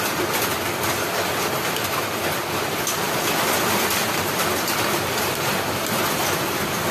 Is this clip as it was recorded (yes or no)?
yes